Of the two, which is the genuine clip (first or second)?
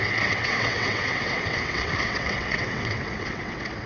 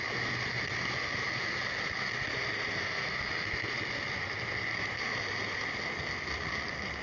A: second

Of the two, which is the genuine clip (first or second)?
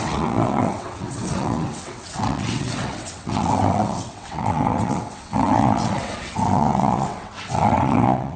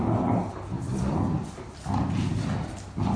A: second